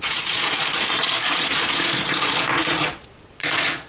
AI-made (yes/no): yes